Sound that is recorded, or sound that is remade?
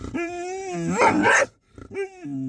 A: recorded